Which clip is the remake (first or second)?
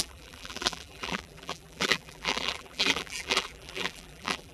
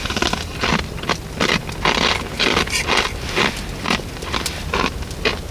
first